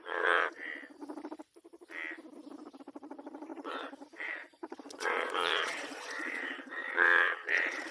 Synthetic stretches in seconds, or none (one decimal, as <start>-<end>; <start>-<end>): 0.0-0.7; 2.8-7.9